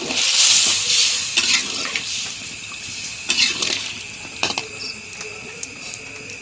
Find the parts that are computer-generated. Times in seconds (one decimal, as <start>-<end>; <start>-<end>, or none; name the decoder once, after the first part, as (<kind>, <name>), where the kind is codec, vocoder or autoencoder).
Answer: 4.4-6.0 (vocoder, BigVGAN v2)